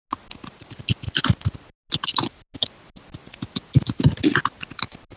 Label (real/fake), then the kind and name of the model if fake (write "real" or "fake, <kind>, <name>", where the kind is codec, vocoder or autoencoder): real